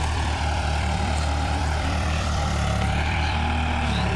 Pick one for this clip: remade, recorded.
remade